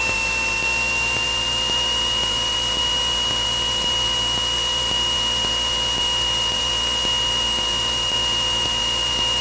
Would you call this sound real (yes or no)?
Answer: yes